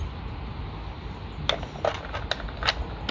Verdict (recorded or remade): recorded